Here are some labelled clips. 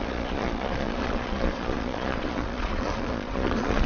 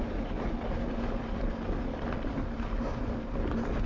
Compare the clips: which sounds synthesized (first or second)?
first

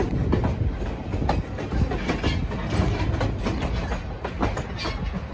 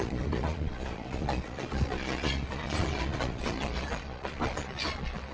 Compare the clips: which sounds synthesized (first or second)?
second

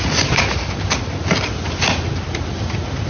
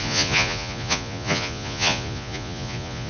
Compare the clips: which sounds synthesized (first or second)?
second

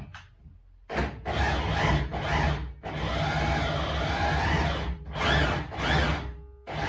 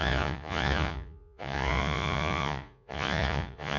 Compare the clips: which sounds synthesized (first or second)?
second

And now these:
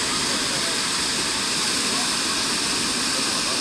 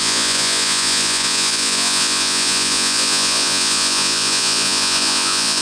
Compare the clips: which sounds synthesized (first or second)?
second